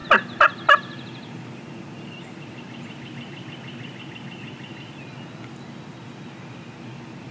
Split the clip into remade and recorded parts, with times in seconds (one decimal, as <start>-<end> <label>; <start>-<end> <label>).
0.0-7.3 recorded